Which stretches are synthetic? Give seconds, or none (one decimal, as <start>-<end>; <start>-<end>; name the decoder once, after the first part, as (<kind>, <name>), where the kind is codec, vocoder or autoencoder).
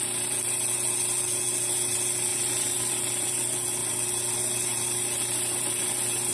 none